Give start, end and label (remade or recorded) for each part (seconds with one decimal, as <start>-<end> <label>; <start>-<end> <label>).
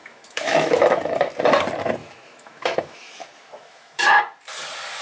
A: 0.0-1.3 remade; 1.3-2.0 recorded; 2.0-4.2 remade; 4.2-5.0 recorded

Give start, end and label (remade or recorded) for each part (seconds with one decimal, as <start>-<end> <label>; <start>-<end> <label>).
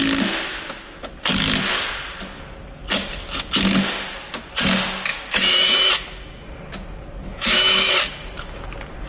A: 0.0-5.1 recorded; 5.1-5.8 remade; 5.8-7.3 recorded; 7.3-7.9 remade; 7.9-9.1 recorded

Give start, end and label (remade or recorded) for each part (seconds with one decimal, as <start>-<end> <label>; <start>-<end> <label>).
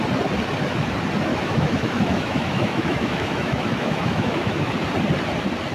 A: 0.0-1.3 recorded; 1.3-4.7 remade; 4.7-5.7 recorded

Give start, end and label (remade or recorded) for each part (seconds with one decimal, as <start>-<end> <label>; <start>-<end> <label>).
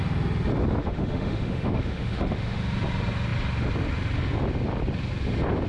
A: 0.0-0.8 recorded; 0.8-2.6 remade; 2.6-5.7 recorded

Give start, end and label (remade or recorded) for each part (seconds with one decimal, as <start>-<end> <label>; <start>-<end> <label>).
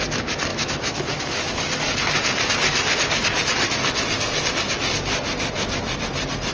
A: 0.0-0.5 recorded; 0.5-1.6 remade; 1.6-6.5 recorded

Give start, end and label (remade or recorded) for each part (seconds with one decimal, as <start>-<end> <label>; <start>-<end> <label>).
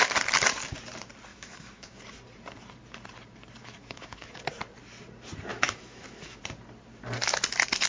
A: 0.0-1.3 recorded; 1.3-2.0 remade; 2.0-3.6 recorded; 3.6-4.4 remade; 4.4-5.5 recorded; 5.5-6.4 remade; 6.4-7.9 recorded